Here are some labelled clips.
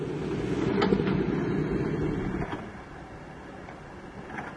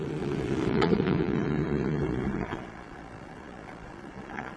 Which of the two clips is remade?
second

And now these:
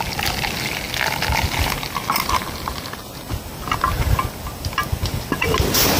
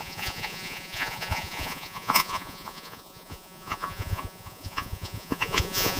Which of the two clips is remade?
second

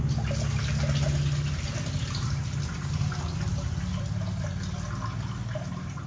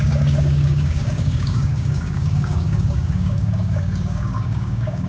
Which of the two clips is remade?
second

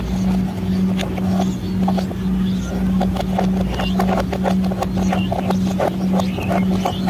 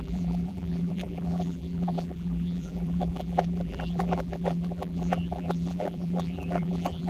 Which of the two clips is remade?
second